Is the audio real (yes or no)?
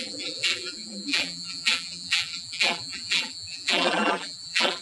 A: no